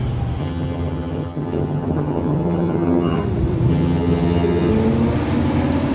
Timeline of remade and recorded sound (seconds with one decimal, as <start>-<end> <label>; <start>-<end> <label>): 0.0-0.4 recorded; 0.4-3.2 remade; 3.2-3.7 recorded; 3.7-4.7 remade; 4.7-5.9 recorded